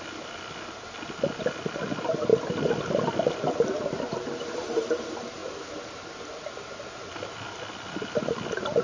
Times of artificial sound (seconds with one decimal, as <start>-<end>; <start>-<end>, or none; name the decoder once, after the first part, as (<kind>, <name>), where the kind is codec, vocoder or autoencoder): none